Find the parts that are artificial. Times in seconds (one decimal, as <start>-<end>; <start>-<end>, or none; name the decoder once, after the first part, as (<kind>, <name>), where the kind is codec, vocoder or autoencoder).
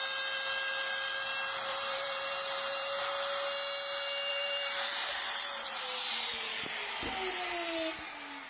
1.7-3.0 (vocoder, BigVGAN v2); 4.3-6.6